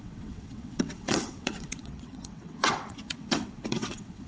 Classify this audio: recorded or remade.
remade